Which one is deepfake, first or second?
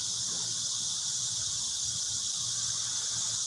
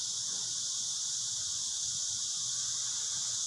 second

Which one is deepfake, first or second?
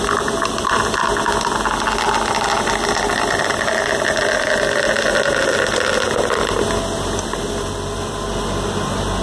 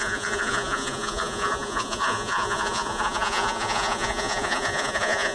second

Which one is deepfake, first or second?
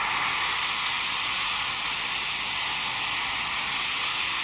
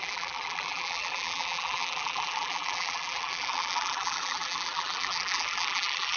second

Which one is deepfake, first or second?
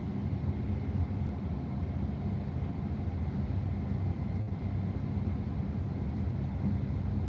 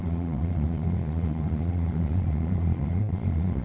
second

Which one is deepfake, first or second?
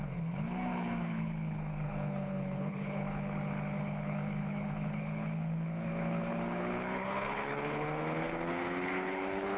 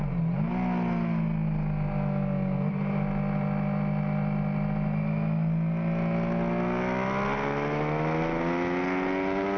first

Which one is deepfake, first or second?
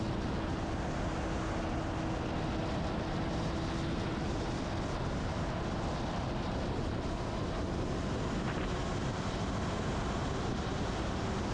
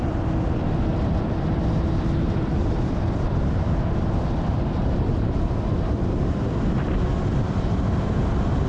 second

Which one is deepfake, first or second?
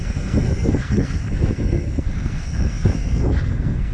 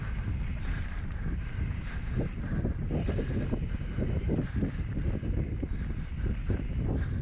first